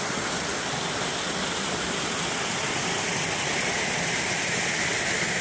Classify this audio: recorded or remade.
recorded